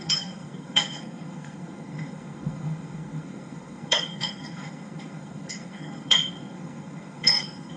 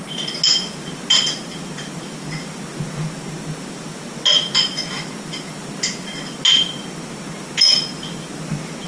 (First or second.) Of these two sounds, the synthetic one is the first